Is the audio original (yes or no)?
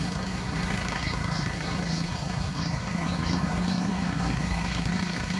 no